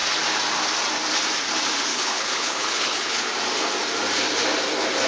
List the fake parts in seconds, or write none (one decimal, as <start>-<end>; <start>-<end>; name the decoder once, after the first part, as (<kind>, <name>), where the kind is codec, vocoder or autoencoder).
1.9-3.3 (codec, HILCodec)